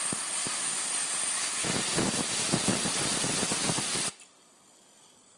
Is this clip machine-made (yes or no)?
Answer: no